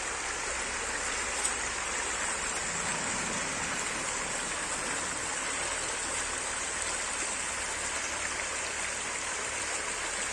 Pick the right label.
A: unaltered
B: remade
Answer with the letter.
A